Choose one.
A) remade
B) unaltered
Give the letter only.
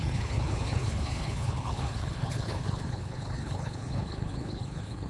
A